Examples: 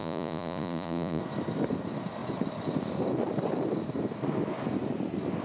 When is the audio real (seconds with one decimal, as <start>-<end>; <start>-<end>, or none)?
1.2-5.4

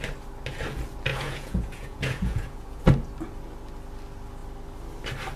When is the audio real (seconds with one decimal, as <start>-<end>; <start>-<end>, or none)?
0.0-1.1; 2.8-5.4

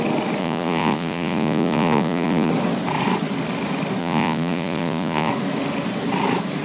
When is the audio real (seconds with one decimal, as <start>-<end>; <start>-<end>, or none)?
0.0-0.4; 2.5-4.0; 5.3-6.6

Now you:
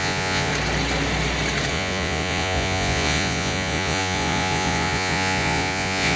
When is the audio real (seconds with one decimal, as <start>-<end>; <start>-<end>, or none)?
0.5-1.7

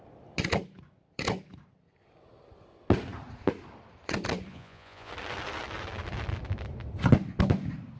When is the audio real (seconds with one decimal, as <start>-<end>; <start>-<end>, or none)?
0.0-4.5; 5.1-8.0